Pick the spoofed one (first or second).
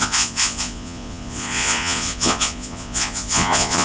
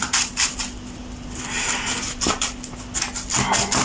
first